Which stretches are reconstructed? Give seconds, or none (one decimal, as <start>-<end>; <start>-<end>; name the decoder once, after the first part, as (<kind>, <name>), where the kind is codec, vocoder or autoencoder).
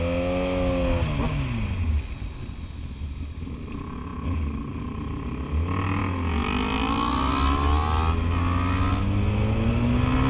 none